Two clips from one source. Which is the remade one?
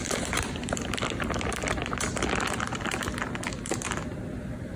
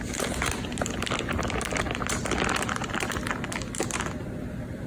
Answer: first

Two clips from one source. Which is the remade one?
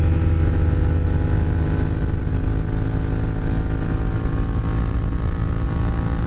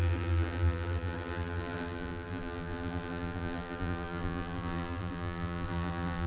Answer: second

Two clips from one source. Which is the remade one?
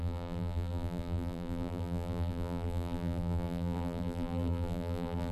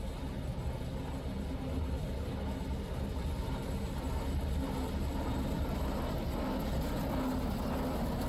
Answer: first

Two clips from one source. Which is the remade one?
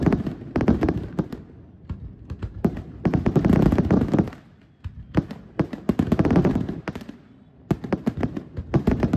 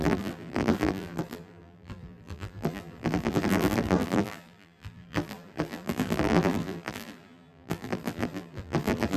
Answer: second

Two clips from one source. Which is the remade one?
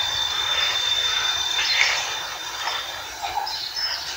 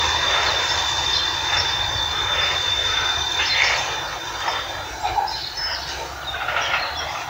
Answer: first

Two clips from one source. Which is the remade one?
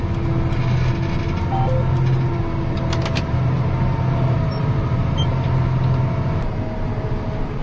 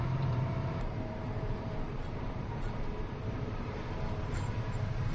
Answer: second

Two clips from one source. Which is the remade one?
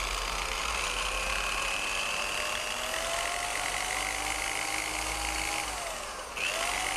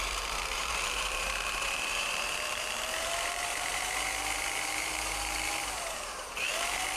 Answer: second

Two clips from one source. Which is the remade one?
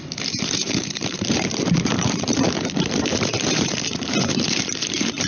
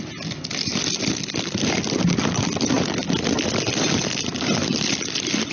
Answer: first